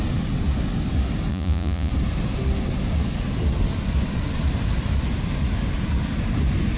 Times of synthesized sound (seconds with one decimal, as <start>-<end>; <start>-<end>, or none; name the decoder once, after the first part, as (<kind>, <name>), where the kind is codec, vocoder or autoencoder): 1.3-1.9 (vocoder, Vocos)